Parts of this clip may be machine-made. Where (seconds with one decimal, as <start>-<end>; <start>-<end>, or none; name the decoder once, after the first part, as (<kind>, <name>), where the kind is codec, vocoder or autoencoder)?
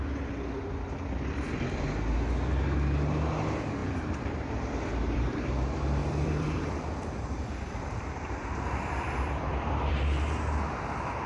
3.8-5.5 (vocoder, BigVGAN v2); 6.0-9.9